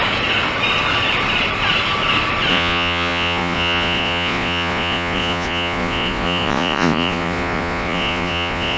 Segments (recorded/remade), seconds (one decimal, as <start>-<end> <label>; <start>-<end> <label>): 0.0-2.5 recorded; 2.5-8.8 remade